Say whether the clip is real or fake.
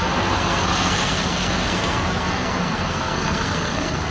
fake